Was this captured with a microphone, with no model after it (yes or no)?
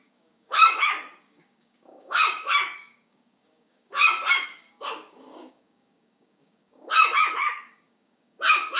no